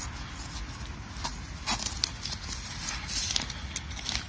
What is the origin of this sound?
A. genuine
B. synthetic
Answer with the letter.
A